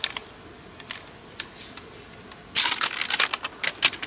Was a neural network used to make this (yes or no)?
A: no